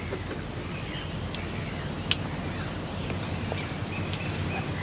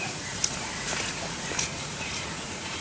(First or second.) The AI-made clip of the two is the second